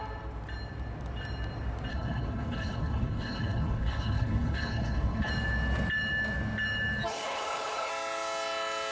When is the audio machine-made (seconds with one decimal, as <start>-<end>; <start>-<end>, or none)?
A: 1.9-5.3; 7.1-7.9